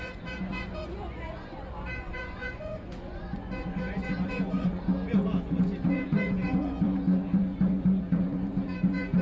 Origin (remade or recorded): remade